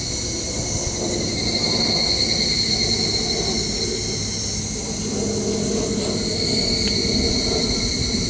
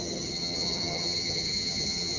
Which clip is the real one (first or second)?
first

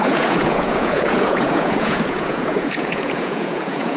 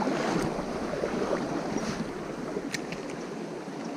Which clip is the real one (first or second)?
second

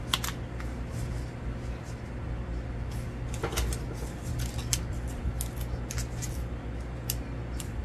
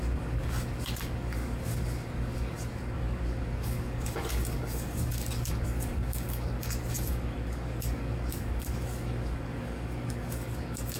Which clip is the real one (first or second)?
first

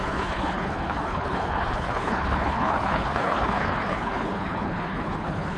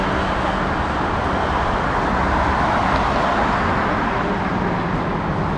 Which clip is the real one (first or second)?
second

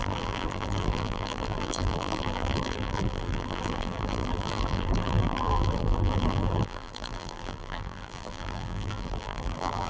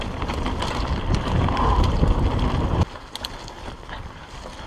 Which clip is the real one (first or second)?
second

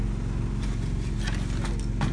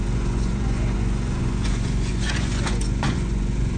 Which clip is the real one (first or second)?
first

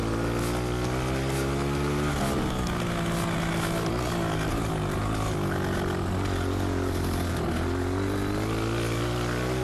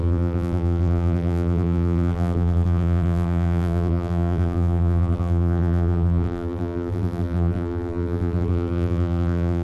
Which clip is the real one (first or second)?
first